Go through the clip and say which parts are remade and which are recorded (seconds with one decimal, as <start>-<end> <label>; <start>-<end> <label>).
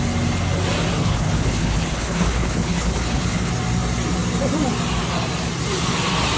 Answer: 0.0-1.0 recorded; 1.0-3.5 remade; 3.5-6.4 recorded